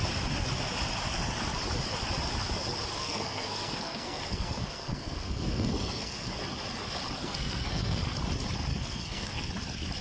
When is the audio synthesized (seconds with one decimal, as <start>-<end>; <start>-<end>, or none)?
3.0-6.3; 7.2-8.0; 8.7-9.5